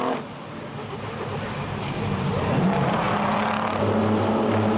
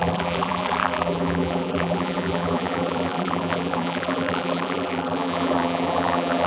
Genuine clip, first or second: first